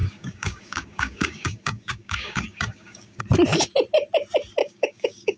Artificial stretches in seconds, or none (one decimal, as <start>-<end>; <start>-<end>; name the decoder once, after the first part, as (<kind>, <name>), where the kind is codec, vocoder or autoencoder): 0.0-3.2 (codec, DAC); 4.6-5.4